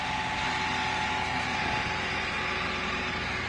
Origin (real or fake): real